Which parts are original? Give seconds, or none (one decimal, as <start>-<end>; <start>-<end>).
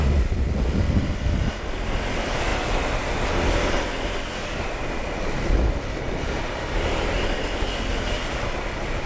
0.0-9.1